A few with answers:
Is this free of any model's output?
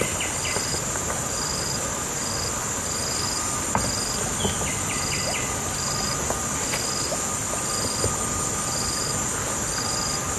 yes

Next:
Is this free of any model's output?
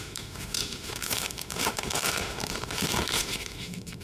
no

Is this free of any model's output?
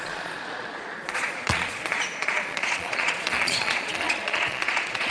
no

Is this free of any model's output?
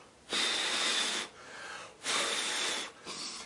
yes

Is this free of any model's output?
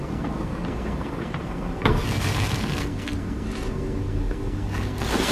no